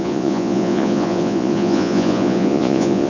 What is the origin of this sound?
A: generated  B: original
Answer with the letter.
A